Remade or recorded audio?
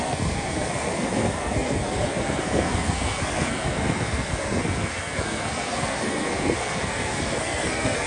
remade